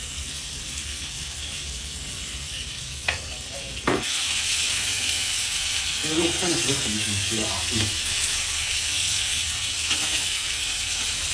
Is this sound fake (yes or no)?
yes